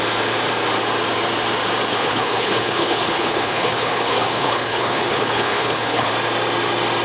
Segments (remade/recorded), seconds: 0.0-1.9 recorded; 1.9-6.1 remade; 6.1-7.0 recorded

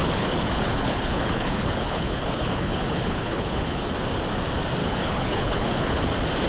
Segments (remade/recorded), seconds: 0.0-3.9 remade; 3.9-4.8 recorded; 4.8-6.1 remade; 6.1-6.5 recorded